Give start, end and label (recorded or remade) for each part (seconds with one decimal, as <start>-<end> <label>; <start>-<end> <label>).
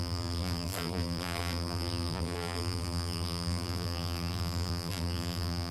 0.0-5.7 remade